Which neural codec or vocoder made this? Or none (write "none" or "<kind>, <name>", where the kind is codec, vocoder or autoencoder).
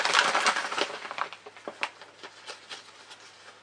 none